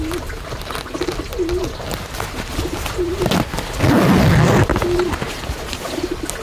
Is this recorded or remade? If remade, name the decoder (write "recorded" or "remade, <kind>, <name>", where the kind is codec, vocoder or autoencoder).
recorded